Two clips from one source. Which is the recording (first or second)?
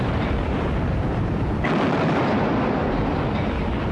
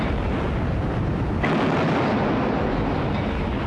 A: second